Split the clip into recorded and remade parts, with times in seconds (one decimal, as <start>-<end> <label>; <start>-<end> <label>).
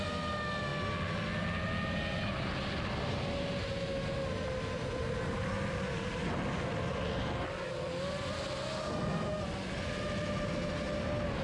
0.0-11.4 recorded